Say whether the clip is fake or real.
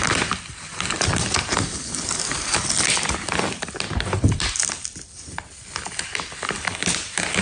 real